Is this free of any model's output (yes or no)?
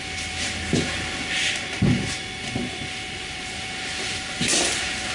no